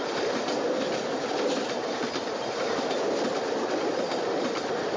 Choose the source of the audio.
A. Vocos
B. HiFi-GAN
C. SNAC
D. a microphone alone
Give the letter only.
D